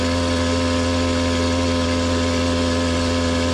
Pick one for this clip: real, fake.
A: real